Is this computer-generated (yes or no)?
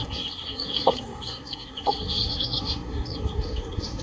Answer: yes